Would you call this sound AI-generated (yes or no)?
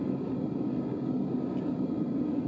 no